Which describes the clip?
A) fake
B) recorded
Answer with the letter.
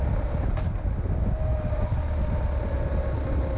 B